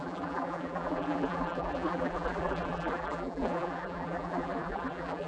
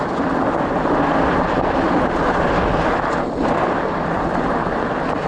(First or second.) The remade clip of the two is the first